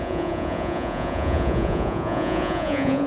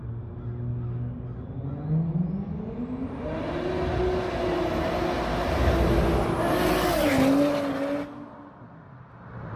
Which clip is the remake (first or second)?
first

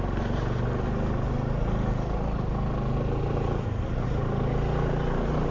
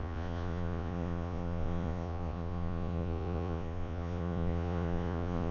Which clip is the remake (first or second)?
second